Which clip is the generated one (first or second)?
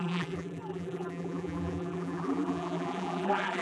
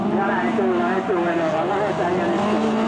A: first